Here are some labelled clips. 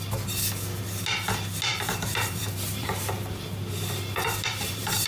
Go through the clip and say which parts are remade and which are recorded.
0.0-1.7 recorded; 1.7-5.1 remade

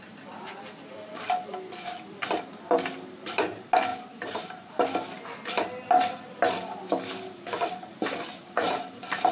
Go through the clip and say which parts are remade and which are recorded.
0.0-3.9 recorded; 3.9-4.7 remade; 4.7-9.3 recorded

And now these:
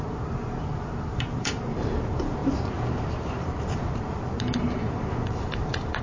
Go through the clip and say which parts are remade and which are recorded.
0.0-6.0 remade

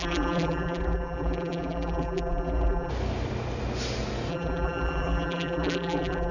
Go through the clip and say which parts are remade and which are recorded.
0.0-2.9 remade; 2.9-4.3 recorded; 4.3-6.3 remade